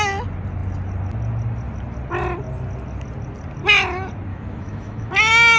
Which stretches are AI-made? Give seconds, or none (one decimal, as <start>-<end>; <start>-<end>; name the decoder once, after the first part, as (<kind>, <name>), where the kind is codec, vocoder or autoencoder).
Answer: 4.3-5.1 (autoencoder, DAC-VAE)